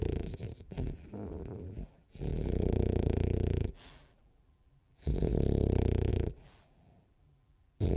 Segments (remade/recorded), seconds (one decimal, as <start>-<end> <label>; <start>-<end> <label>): 0.0-5.3 remade; 5.3-6.1 recorded; 6.1-8.0 remade